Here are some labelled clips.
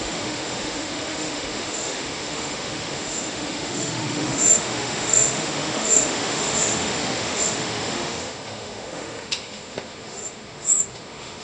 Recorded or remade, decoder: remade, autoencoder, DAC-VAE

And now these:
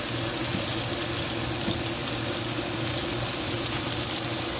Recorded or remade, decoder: recorded